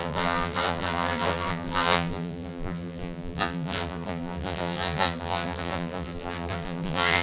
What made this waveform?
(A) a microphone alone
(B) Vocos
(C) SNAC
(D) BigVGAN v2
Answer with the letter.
D